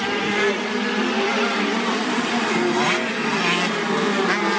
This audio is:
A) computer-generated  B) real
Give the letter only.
B